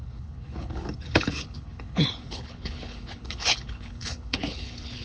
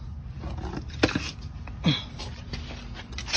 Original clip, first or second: second